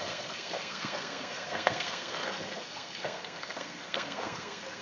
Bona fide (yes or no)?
no